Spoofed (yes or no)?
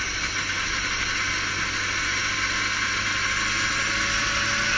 no